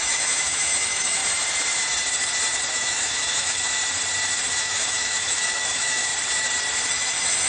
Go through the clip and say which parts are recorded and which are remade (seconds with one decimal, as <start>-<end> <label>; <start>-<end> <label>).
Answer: 0.0-1.2 remade; 1.2-2.7 recorded; 2.7-3.8 remade; 3.8-4.6 recorded; 4.6-6.1 remade; 6.1-6.9 recorded; 6.9-7.5 remade